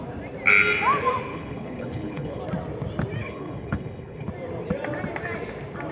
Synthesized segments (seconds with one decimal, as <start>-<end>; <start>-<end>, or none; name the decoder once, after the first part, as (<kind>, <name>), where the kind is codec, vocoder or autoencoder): 1.3-2.4 (codec, HILCodec); 3.2-4.3